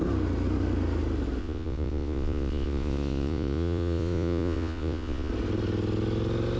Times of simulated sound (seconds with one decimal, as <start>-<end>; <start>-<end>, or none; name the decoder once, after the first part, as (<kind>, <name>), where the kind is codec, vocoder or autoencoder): 1.4-5.3 (vocoder, Vocos)